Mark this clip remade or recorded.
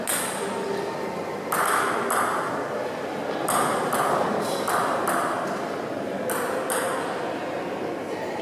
recorded